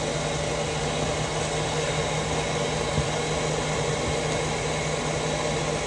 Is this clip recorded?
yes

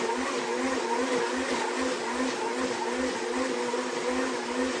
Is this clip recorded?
yes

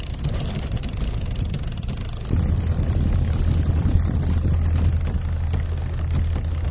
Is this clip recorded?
yes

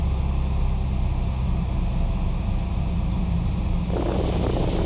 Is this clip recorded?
yes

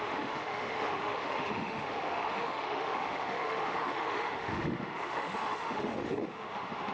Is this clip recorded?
no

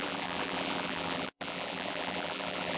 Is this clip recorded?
no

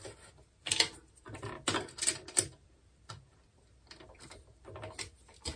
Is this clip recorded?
yes